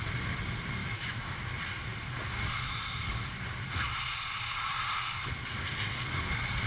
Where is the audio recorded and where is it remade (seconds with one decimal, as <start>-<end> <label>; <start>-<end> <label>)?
0.0-0.8 recorded; 0.8-1.4 remade; 1.4-6.7 recorded